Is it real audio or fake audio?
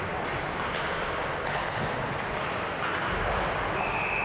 real